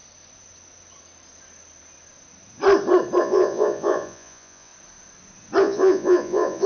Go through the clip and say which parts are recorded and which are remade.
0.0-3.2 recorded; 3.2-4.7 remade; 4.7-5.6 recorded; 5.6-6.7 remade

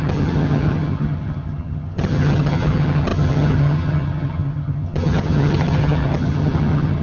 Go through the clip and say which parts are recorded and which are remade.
0.0-7.0 remade

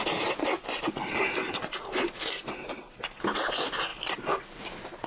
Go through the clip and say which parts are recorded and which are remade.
0.0-5.1 recorded

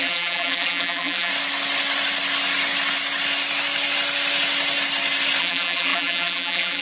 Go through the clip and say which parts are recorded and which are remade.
0.0-1.3 remade; 1.3-5.4 recorded; 5.4-6.8 remade

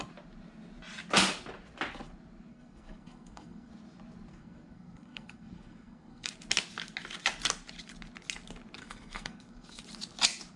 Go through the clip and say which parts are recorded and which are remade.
0.0-2.5 recorded; 2.5-3.7 remade; 3.7-4.3 recorded; 4.3-6.3 remade; 6.3-8.8 recorded; 8.8-9.8 remade; 9.8-10.6 recorded

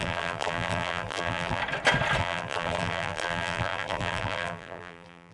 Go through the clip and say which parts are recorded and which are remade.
0.0-1.6 remade; 1.6-2.2 recorded; 2.2-5.3 remade